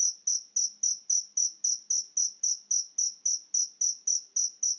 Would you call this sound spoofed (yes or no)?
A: no